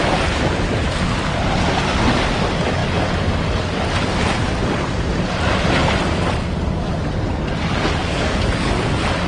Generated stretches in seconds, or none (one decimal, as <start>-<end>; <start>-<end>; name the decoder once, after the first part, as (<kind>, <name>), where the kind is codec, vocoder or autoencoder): 8.0-8.7 (codec, DAC)